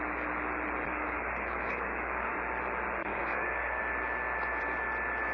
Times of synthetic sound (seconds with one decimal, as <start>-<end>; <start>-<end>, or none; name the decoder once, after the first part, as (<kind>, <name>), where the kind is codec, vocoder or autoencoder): 0.9-2.4 (codec, DAC); 3.0-3.8